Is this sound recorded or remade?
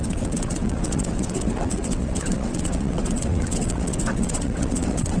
remade